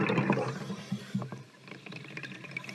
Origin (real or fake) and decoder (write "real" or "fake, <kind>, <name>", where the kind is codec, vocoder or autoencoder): fake, vocoder, BigVGAN v2